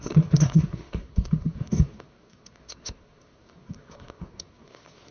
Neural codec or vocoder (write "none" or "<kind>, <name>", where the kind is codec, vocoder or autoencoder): codec, SNAC